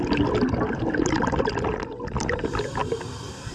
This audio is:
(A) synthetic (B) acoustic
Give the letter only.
B